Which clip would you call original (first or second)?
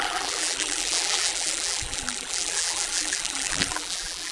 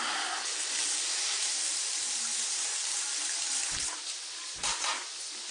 second